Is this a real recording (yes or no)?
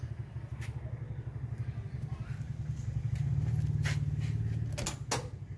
yes